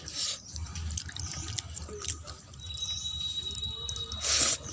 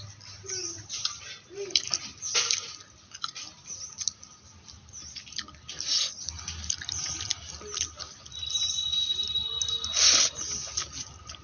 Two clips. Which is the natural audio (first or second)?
second